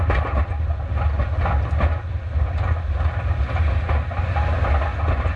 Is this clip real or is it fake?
real